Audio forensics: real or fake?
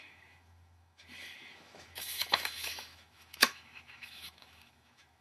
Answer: fake